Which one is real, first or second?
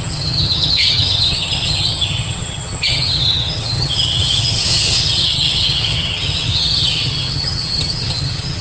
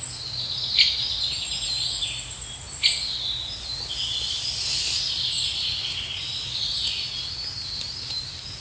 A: second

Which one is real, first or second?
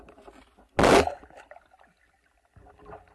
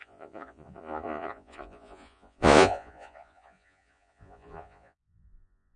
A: first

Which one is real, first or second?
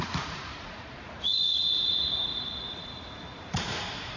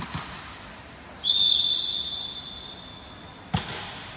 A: second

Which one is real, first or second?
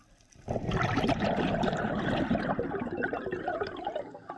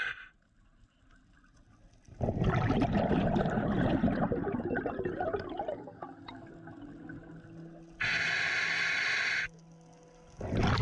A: second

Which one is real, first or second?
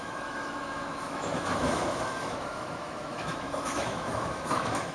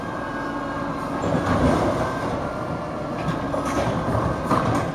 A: second